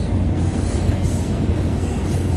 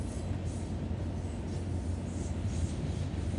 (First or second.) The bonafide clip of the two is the second